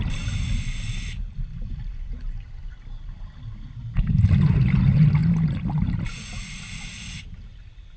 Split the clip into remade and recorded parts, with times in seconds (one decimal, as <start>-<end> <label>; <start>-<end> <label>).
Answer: 0.0-8.0 recorded